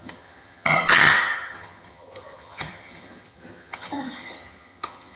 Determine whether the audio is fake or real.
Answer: fake